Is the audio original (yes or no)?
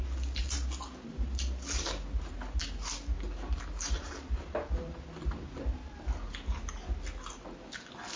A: yes